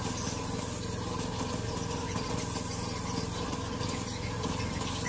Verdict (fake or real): real